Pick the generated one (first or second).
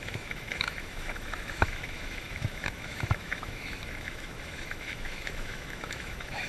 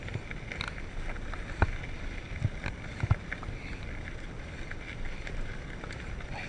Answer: first